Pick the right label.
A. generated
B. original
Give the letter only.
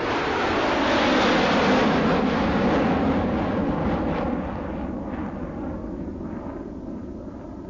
B